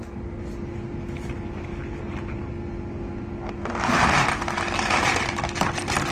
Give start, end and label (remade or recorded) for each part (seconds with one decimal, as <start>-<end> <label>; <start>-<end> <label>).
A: 0.0-6.1 recorded